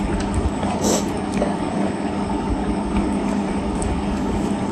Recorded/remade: remade